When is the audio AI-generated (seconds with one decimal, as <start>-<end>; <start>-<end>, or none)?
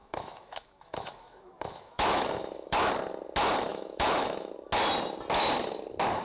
0.0-2.9; 3.7-4.5